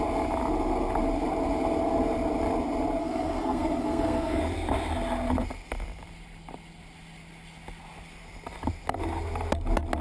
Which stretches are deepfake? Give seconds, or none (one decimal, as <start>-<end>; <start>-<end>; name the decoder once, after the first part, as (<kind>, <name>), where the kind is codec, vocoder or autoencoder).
3.0-4.4 (codec, SNAC)